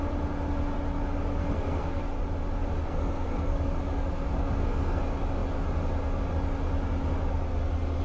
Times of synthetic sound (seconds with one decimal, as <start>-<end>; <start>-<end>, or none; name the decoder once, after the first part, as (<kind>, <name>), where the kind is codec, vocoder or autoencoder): 1.4-2.0 (codec, SNAC); 2.8-5.0